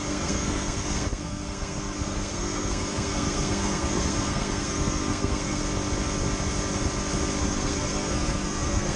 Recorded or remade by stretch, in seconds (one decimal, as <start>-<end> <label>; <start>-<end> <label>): 0.0-5.6 remade; 5.6-7.4 recorded; 7.4-9.0 remade